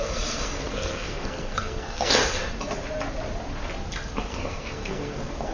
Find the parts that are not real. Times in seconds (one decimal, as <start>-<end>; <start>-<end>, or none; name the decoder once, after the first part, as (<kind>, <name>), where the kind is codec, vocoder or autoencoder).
0.0-2.2 (codec, SNAC); 4.2-5.5